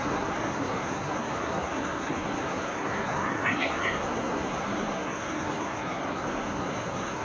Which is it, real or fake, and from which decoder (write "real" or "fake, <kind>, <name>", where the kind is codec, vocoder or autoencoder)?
fake, codec, SNAC